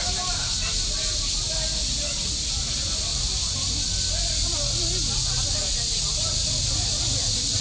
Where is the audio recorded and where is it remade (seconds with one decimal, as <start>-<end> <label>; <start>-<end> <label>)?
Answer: 0.0-7.6 recorded